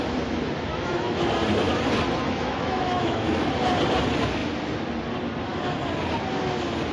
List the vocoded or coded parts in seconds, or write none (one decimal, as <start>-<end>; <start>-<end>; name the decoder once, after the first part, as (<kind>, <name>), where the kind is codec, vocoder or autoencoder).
0.7-1.3 (autoencoder, DAC-VAE); 2.2-3.5